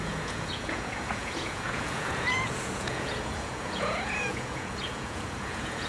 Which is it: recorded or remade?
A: remade